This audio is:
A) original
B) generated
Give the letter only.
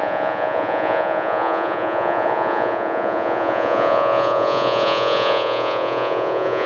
B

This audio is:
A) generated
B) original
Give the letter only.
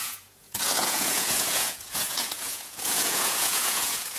A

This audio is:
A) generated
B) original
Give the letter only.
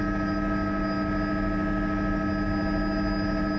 B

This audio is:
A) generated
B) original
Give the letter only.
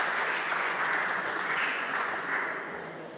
A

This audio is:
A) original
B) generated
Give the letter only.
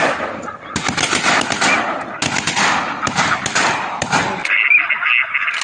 A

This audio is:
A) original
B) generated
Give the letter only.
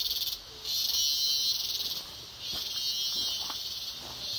A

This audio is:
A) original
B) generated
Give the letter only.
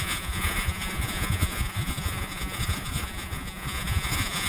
B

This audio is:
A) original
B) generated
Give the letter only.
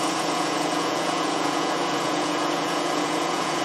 B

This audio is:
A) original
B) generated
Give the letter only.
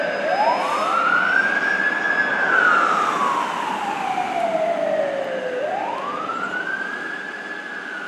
A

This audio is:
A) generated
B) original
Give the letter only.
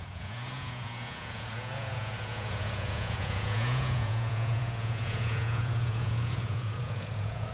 A